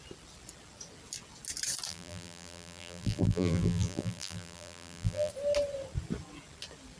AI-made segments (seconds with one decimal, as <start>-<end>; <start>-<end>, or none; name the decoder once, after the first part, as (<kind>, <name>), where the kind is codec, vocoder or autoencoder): 1.9-5.3 (vocoder, BigVGAN v2)